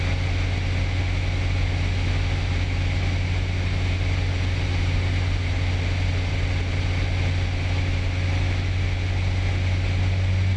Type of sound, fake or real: real